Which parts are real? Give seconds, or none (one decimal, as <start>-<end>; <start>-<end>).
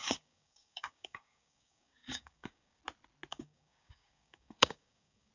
2.8-3.3